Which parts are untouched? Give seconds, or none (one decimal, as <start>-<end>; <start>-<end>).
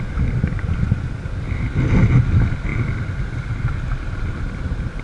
0.0-5.0